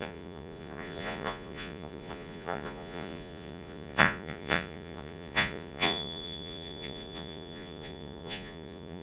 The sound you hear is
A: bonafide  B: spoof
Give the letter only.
B